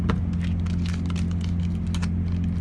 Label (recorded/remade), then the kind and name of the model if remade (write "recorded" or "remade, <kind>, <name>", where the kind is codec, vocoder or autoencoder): recorded